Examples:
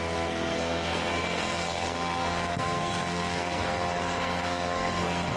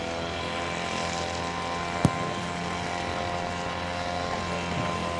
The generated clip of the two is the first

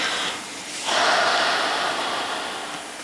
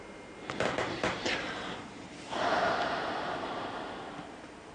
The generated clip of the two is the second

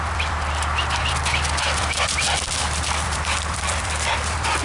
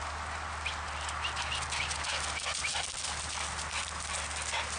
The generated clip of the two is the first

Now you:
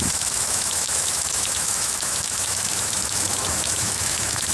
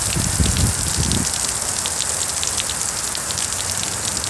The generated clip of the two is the first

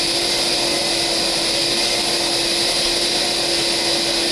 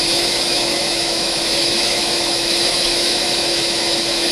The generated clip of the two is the second